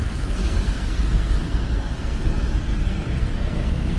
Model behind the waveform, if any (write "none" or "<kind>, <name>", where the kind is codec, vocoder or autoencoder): codec, SNAC